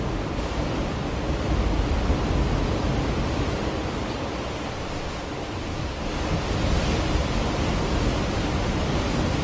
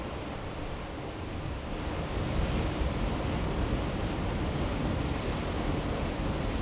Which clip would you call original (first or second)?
first